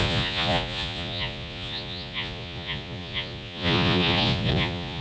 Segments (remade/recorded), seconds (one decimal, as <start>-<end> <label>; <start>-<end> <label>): 0.0-5.0 remade

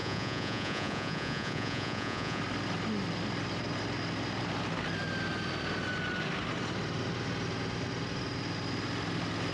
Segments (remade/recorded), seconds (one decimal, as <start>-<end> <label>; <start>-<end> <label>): 0.0-2.4 remade; 2.4-9.5 recorded

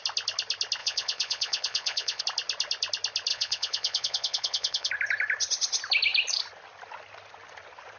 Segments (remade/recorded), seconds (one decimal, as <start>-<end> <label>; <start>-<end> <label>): 0.0-0.8 recorded; 0.8-2.2 remade; 2.2-3.3 recorded; 3.3-4.9 remade; 4.9-8.0 recorded

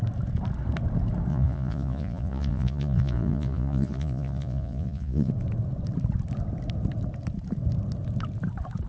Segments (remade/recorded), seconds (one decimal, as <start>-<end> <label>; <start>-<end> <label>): 0.0-1.3 recorded; 1.3-5.3 remade; 5.3-8.9 recorded